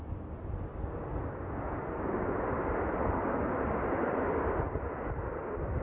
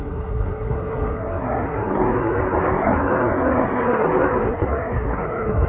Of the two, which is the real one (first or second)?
first